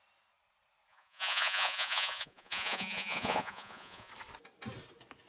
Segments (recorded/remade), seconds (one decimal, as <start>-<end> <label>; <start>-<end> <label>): 0.0-0.9 recorded; 0.9-4.1 remade; 4.1-5.3 recorded